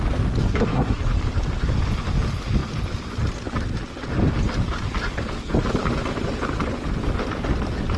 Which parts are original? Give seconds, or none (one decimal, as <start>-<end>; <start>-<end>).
0.0-0.4; 1.0-8.0